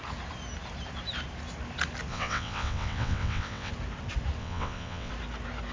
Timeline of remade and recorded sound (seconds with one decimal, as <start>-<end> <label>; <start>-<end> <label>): 0.0-2.1 recorded; 2.1-3.7 remade; 3.7-4.4 recorded; 4.4-5.1 remade; 5.1-5.7 recorded